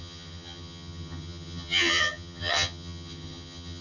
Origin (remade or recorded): remade